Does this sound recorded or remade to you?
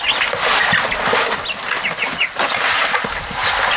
recorded